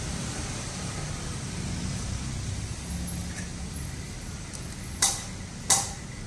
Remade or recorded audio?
recorded